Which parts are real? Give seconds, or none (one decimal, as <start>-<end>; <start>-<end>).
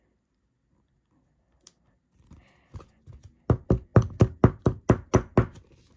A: 0.0-6.0